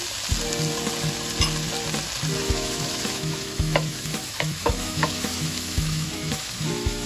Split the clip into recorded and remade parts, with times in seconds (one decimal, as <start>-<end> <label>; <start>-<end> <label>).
0.0-2.4 recorded; 2.4-7.1 remade